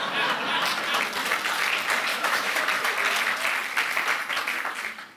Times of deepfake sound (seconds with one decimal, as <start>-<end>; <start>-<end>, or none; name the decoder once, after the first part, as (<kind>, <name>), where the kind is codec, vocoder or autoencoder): 2.1-2.6 (autoencoder, DAC-VAE)